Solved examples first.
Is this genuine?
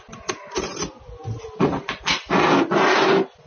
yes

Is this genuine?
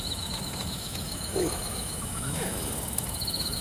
no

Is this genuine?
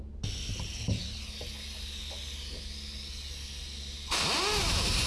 yes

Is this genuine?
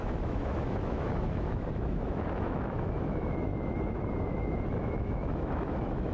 no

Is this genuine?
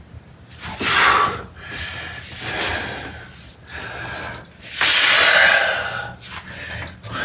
yes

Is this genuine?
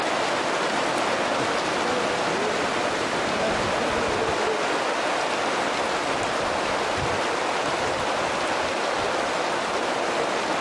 yes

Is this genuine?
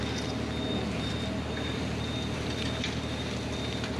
yes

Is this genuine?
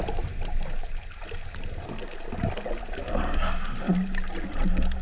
yes